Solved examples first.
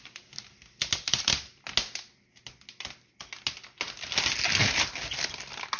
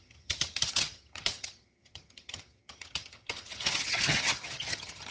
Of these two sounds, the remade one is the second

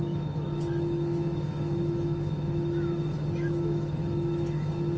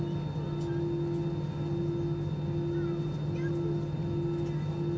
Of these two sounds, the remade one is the first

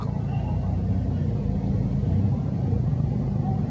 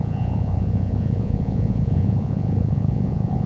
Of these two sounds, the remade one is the second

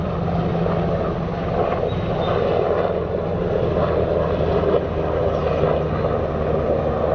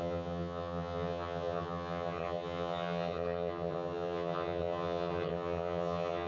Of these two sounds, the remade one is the second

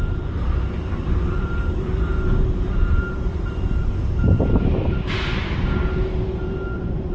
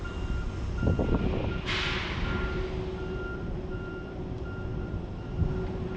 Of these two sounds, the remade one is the first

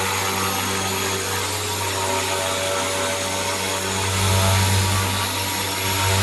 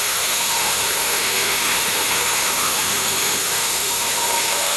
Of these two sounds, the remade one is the second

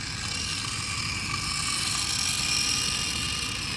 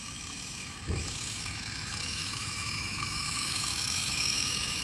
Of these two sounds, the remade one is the second